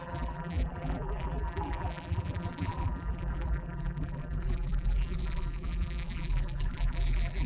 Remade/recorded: remade